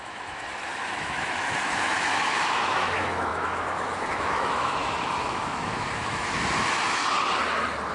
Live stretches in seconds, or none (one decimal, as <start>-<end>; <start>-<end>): 7.0-7.9